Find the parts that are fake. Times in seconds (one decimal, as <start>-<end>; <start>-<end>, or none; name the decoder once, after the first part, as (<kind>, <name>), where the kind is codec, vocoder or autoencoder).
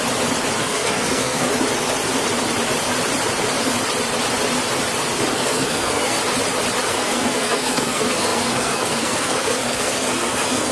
0.6-1.5 (codec, SNAC); 5.3-6.2; 6.9-10.7